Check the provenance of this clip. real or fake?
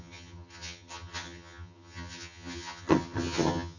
fake